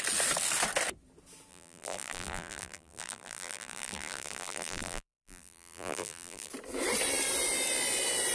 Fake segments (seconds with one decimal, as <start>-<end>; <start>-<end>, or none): 1.5-6.5